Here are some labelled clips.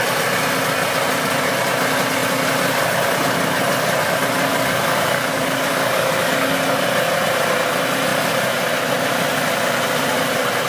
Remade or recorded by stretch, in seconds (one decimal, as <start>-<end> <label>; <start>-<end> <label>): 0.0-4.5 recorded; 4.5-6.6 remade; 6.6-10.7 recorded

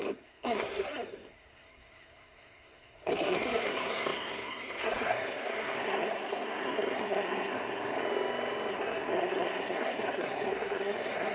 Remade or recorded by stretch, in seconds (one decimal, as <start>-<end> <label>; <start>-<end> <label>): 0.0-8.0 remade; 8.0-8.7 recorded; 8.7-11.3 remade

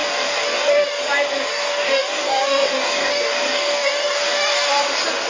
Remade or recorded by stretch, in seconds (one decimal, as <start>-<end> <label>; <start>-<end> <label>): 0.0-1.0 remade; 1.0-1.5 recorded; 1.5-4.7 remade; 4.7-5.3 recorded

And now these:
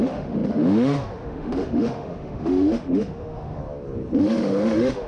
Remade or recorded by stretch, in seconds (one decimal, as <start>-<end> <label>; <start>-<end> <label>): 0.0-3.6 remade; 3.6-4.2 recorded; 4.2-5.1 remade

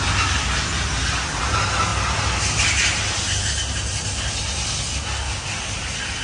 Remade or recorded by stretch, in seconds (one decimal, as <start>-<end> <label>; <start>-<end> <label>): 0.0-6.2 recorded